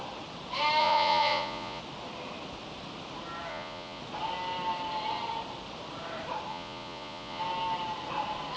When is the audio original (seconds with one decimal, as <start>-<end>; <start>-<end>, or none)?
0.0-0.8; 1.8-3.5; 4.0-6.5; 7.4-8.6